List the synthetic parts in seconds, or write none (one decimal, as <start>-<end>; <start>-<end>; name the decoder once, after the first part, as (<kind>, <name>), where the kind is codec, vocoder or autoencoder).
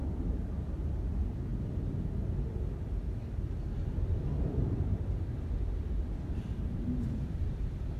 0.0-1.5 (vocoder, BigVGAN v2); 4.5-8.0